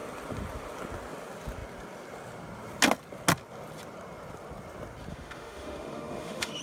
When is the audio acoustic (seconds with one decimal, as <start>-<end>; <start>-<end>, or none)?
0.0-5.1